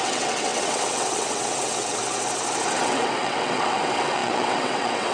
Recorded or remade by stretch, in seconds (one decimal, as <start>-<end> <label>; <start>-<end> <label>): 0.0-2.0 remade; 2.0-2.8 recorded; 2.8-5.1 remade